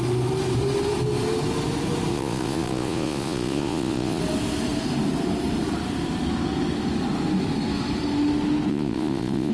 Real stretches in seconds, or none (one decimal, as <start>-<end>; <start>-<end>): 0.0-2.1; 4.2-8.7

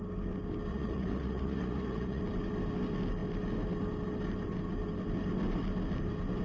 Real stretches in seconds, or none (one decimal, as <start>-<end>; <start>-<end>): 0.0-0.7; 2.2-6.4

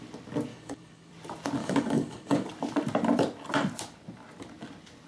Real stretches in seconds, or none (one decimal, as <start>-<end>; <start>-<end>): 0.0-0.5; 1.1-1.6; 2.5-5.1

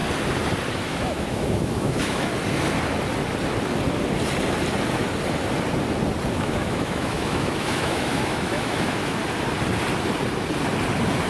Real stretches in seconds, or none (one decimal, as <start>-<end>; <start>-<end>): 0.0-0.7; 2.3-6.3; 9.2-11.3

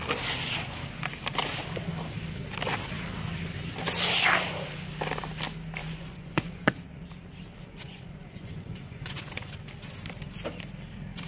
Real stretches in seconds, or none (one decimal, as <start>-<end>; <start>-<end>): 0.0-5.8; 6.7-7.8; 9.5-11.3

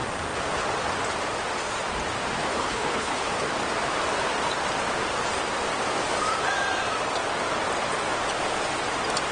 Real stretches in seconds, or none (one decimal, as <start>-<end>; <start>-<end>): 0.0-2.5; 3.3-9.3